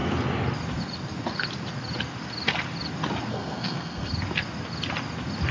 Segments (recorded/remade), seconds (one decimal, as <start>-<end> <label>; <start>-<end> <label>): 0.0-3.3 recorded; 3.3-4.1 remade; 4.1-5.5 recorded